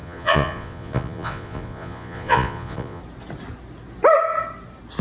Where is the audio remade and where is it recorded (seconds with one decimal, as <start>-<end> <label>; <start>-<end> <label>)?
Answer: 0.0-3.0 remade; 3.0-5.0 recorded